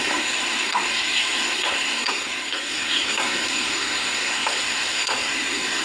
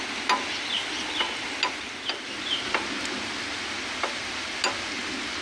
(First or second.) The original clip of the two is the second